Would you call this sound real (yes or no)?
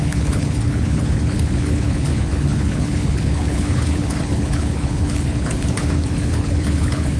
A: no